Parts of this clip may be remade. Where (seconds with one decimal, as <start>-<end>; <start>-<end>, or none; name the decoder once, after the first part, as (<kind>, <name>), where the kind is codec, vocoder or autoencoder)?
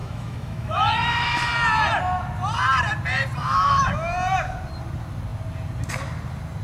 0.0-1.5 (autoencoder, DAC-VAE); 3.4-3.9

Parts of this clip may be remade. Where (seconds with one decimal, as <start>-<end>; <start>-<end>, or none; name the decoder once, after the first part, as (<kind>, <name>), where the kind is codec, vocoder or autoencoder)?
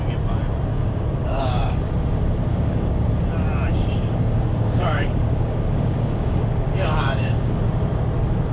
0.7-1.9 (codec, DAC); 2.5-3.1; 3.7-7.6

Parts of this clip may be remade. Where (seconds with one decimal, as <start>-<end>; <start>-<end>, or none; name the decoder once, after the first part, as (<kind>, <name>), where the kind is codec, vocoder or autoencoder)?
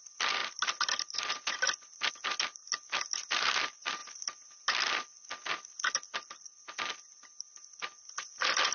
none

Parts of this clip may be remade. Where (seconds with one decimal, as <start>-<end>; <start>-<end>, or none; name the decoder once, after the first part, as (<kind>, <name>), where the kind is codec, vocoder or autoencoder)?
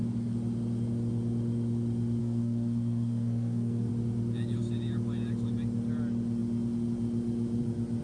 2.2-3.9 (codec, SNAC)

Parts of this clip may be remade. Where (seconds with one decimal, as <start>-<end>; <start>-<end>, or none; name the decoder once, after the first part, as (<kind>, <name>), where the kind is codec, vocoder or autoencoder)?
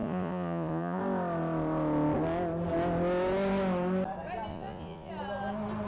0.0-1.0 (vocoder, Vocos); 4.5-5.1